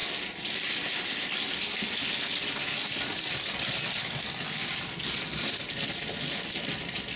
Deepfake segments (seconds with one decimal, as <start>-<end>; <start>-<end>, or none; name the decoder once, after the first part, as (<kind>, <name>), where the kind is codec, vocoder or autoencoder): none